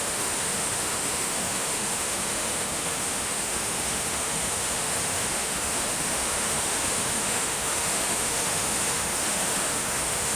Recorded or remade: remade